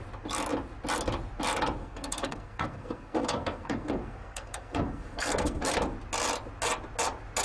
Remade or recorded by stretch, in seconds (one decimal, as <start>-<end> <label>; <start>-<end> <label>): 0.0-1.8 recorded; 1.8-5.7 remade; 5.7-7.4 recorded